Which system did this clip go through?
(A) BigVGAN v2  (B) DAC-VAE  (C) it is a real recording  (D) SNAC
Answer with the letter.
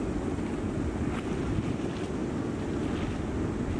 C